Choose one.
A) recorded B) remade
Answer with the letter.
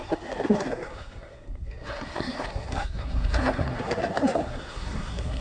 B